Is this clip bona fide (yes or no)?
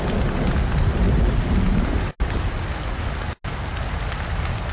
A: yes